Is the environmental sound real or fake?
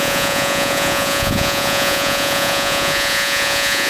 fake